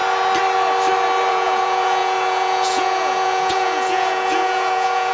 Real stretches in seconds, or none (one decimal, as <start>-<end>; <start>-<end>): 0.0-1.3